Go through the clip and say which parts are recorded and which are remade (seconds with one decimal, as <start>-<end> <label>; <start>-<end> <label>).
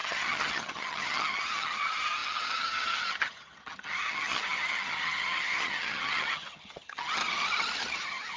0.0-7.2 remade; 7.2-8.0 recorded; 8.0-8.4 remade